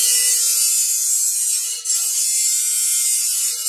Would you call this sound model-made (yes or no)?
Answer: yes